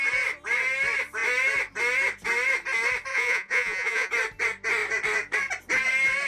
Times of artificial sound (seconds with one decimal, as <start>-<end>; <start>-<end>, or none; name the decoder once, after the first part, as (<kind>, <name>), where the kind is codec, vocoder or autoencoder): 3.1-4.1 (vocoder, Vocos)